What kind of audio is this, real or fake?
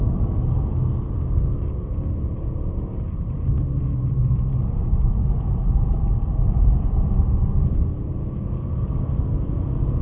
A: real